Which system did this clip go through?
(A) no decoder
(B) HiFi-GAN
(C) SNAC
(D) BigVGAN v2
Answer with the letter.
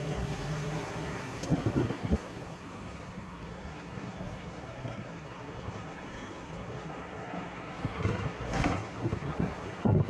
C